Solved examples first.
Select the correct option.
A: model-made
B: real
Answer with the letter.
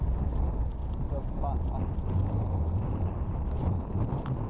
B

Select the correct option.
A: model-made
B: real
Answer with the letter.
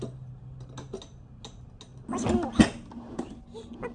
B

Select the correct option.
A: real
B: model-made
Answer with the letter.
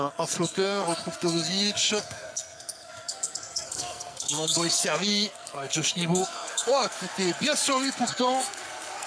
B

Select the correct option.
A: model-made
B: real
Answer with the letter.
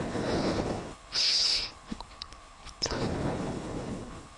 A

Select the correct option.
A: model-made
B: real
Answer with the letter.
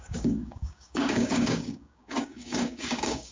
A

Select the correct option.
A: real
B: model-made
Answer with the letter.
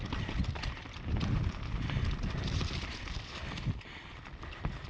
A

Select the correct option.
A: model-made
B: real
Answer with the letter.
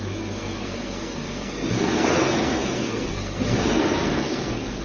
A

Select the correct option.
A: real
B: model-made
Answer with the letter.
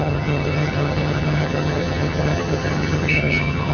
B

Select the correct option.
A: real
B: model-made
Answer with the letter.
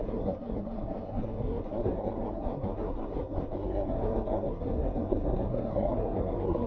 B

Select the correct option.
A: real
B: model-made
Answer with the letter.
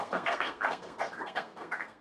B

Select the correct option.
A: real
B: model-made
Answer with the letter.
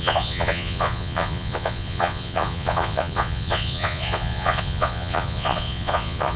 B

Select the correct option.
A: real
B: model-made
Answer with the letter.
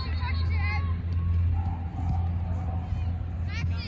A